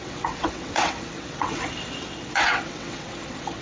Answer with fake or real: fake